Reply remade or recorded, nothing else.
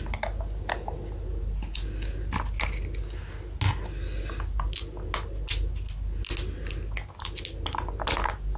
recorded